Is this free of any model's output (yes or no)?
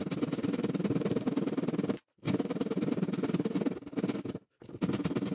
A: yes